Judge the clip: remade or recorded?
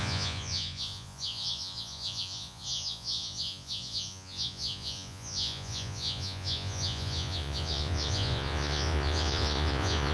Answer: remade